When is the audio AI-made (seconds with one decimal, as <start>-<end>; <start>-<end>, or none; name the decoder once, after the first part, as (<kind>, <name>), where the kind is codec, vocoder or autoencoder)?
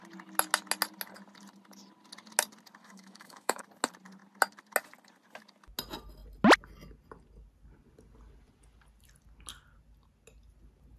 2.8-3.6 (autoencoder, DAC-VAE)